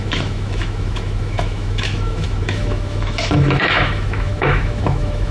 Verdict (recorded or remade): remade